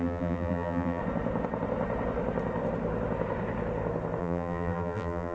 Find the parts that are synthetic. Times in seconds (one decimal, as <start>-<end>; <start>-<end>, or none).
0.0-1.0; 4.2-5.3